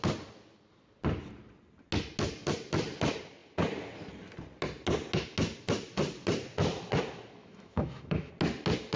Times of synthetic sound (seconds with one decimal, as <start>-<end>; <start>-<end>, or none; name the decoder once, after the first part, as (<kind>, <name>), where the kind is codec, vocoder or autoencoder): 7.4-8.3 (autoencoder, DAC-VAE)